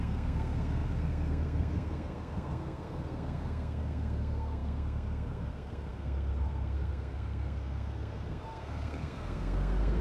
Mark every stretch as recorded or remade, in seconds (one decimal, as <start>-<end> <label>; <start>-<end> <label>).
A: 0.0-10.0 remade